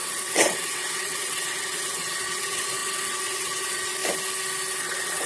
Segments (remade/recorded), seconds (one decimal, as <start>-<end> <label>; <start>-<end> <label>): 0.0-4.0 remade; 4.0-4.8 recorded; 4.8-5.3 remade

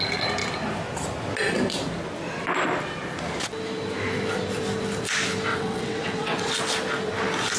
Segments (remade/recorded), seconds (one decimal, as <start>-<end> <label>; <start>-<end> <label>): 0.0-5.5 recorded; 5.5-6.5 remade; 6.5-7.6 recorded

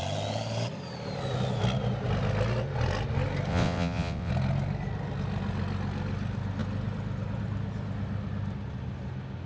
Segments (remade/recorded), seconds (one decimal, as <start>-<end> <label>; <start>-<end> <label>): 0.0-3.5 recorded; 3.5-4.3 remade; 4.3-9.5 recorded

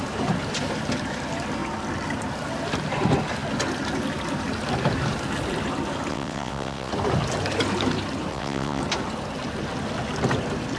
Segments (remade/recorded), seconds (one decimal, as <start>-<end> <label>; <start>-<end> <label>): 0.0-6.1 recorded; 6.1-6.9 remade; 6.9-8.3 recorded; 8.3-8.8 remade; 8.8-10.8 recorded

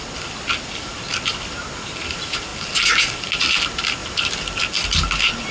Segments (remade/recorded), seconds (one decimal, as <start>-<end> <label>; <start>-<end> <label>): 0.0-5.5 recorded